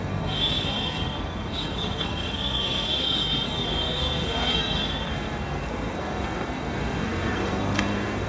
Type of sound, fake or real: fake